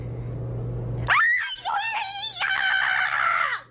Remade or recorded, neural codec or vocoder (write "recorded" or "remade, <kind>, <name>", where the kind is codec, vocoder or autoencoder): recorded